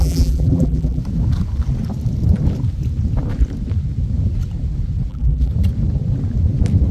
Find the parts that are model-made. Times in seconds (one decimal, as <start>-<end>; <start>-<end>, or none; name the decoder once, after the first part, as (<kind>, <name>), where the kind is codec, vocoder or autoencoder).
0.0-1.0 (vocoder, BigVGAN v2); 5.1-5.5